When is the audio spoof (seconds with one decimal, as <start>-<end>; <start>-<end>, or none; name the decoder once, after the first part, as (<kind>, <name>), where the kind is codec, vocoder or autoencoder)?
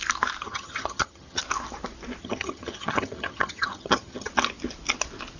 0.4-1.4 (vocoder, HiFi-GAN); 2.2-4.3